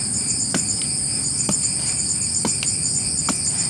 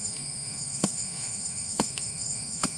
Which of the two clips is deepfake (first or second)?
second